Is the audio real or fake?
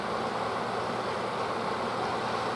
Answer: real